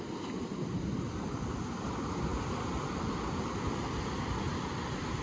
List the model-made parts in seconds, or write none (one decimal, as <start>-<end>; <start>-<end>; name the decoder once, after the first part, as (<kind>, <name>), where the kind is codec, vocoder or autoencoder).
none